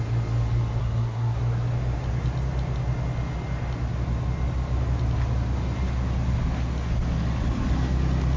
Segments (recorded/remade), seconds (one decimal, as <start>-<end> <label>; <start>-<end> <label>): 0.0-0.8 recorded; 0.8-1.4 remade; 1.4-8.4 recorded